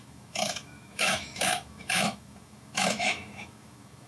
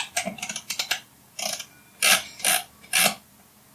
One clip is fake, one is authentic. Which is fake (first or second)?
first